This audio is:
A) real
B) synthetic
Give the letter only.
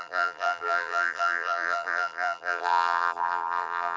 B